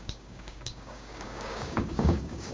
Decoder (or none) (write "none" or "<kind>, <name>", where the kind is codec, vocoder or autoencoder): codec, DAC